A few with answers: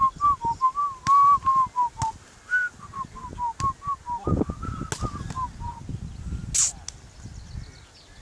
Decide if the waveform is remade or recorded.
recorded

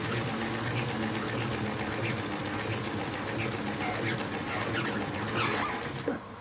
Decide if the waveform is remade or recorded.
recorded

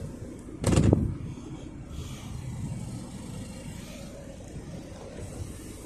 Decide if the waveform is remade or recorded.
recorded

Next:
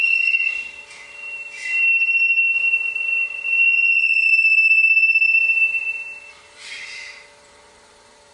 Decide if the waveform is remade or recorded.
remade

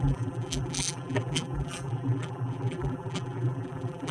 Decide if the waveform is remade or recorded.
remade